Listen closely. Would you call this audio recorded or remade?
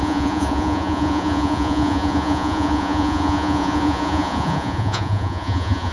remade